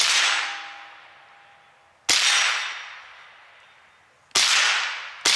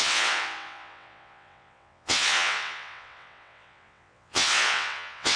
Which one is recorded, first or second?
first